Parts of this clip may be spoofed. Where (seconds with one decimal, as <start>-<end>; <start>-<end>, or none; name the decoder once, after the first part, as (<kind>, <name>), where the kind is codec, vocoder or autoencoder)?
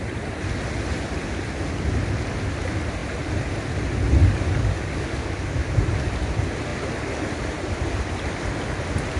4.2-6.0 (codec, DAC)